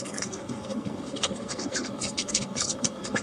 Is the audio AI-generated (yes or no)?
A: yes